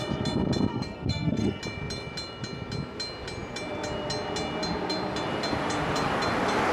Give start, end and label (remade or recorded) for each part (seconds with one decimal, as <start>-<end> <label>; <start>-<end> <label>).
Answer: 0.0-0.7 recorded; 0.7-1.6 remade; 1.6-6.7 recorded